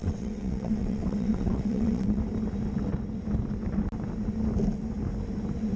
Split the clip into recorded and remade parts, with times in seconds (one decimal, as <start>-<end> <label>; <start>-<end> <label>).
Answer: 0.0-2.2 remade; 2.2-5.8 recorded